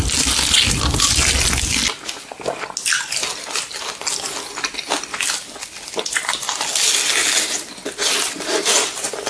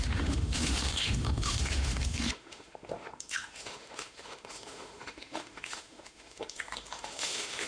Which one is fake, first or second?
second